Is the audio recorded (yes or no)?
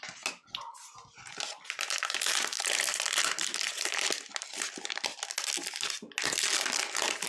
yes